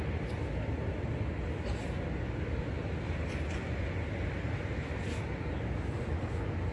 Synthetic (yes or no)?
no